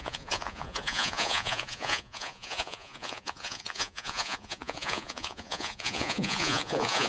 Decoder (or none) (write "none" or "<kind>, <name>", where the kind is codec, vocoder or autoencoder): vocoder, Vocos